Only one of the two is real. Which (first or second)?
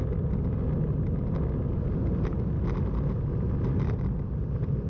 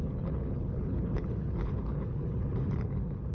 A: first